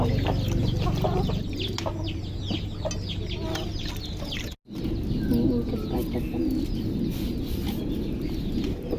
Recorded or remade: recorded